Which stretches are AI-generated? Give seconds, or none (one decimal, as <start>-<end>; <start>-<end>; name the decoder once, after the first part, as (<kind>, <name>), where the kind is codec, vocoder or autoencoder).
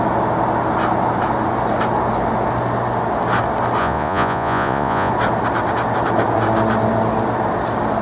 3.8-5.1 (vocoder, Vocos)